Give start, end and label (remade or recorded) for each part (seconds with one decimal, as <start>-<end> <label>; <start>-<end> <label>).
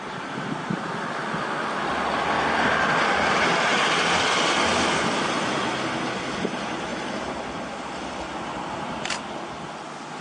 0.0-10.2 recorded